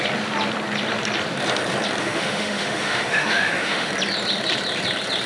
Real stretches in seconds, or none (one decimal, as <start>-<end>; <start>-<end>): 0.0-2.0; 3.9-5.3